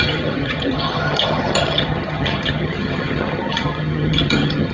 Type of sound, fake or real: fake